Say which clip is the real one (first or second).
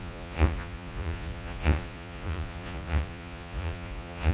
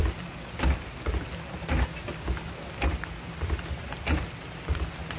second